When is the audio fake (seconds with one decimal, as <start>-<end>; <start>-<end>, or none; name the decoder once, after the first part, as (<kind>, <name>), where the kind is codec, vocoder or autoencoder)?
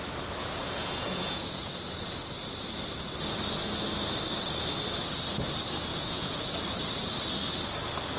0.4-1.7 (vocoder, Vocos); 5.9-6.5